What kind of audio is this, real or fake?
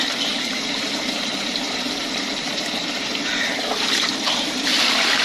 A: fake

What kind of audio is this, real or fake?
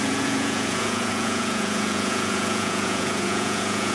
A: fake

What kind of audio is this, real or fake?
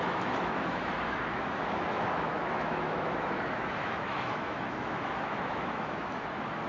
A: fake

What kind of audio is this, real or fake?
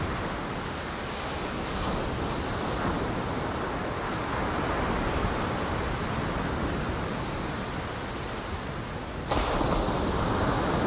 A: real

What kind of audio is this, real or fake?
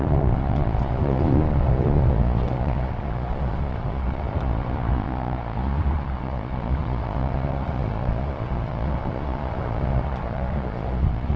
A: fake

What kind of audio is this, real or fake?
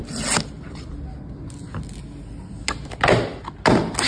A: real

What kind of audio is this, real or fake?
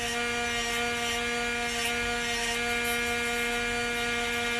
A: real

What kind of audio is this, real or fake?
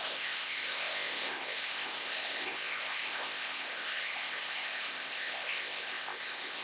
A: fake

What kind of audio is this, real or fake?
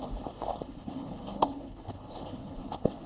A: fake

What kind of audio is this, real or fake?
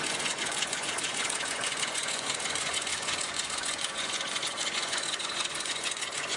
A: fake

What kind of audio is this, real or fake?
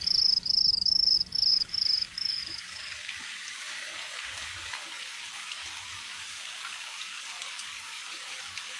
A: fake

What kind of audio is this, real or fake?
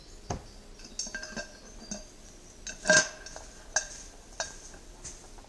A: real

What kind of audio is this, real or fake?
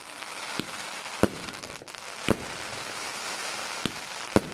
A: fake